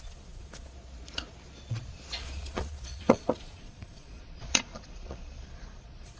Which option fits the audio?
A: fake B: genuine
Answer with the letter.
A